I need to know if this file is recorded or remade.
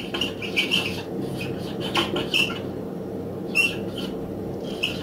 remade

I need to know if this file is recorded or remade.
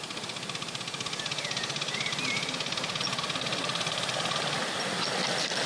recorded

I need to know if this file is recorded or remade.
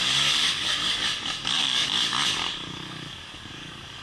remade